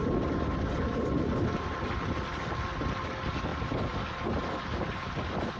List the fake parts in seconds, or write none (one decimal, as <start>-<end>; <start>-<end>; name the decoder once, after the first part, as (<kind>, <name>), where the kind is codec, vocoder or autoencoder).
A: none